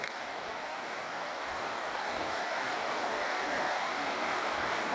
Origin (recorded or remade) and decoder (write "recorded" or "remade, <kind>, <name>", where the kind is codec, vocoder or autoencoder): remade, codec, DAC